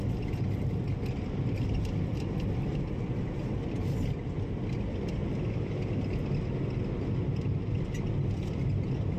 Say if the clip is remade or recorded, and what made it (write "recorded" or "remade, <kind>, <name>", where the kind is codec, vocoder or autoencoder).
recorded